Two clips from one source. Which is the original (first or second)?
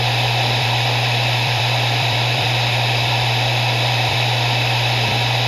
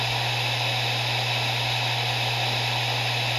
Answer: second